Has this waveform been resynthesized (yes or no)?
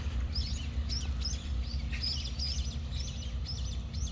no